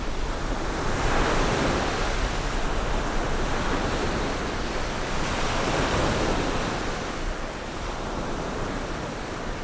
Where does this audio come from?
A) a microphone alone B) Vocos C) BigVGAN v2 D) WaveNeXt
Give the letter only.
C